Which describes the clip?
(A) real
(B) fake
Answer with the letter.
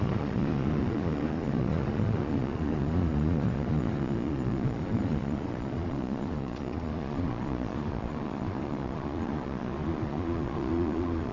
B